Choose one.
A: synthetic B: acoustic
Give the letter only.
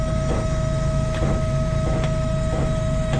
A